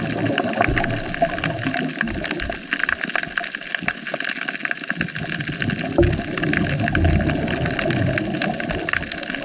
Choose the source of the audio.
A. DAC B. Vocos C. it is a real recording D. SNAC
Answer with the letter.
C